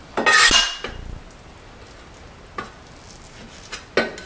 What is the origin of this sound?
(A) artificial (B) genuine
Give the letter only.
B